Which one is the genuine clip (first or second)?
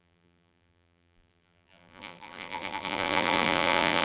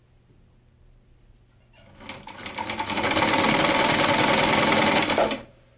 second